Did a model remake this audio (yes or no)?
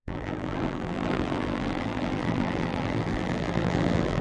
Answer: yes